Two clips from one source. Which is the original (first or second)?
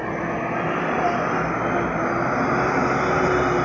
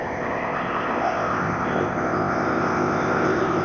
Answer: first